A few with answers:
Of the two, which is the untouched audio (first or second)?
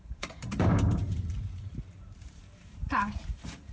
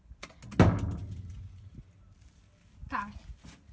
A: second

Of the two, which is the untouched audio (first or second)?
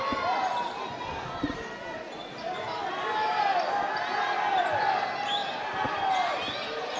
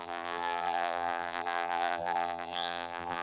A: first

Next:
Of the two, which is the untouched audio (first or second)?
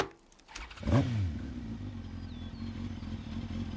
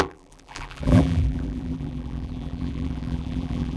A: first